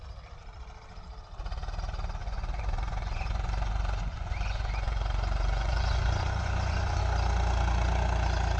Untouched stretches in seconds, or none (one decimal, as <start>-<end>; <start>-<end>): 0.0-2.2; 7.0-8.6